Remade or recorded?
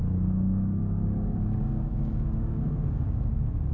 remade